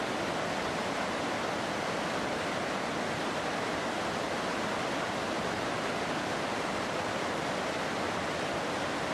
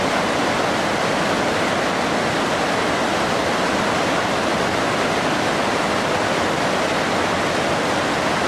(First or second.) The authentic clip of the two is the second